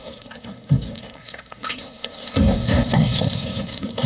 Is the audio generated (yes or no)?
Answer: yes